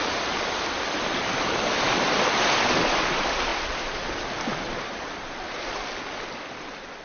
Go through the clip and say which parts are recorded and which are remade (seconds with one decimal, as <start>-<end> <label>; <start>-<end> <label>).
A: 0.0-7.0 recorded